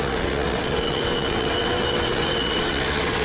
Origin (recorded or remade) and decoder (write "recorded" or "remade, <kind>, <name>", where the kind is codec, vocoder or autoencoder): remade, vocoder, WaveNeXt